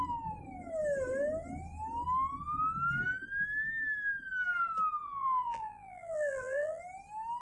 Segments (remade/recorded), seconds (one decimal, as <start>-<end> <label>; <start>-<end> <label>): 0.0-5.0 recorded; 5.0-6.8 remade; 6.8-7.4 recorded